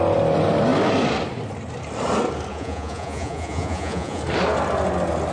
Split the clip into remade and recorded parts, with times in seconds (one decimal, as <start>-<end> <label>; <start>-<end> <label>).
0.0-2.5 recorded; 2.5-4.2 remade; 4.2-5.3 recorded